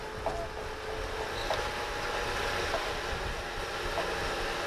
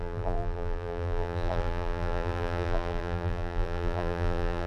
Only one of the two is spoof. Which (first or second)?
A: second